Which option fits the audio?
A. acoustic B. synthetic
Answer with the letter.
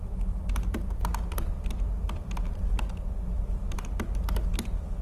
A